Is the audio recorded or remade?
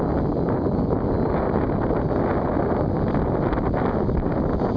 recorded